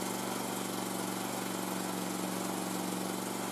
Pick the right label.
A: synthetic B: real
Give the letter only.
B